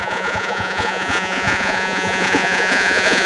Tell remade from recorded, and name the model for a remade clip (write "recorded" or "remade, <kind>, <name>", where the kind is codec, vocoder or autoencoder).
remade, vocoder, Vocos